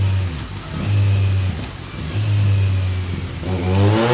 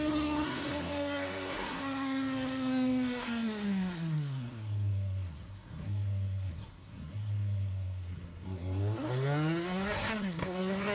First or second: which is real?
first